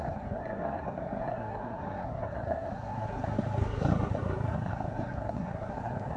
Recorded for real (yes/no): no